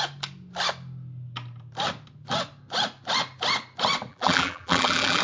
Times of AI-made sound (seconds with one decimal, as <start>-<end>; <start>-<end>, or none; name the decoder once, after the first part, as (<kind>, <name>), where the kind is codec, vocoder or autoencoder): 4.1-5.2 (vocoder, BigVGAN v2)